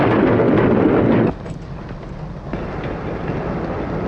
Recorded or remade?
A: recorded